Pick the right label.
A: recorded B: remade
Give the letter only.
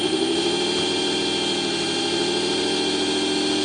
A